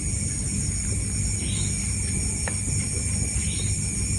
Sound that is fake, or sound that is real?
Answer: real